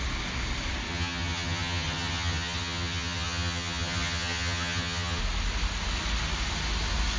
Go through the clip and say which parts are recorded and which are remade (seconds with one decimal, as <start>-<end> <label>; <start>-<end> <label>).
0.0-0.9 recorded; 0.9-5.2 remade; 5.2-7.2 recorded